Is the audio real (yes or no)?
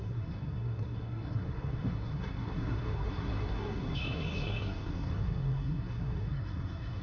no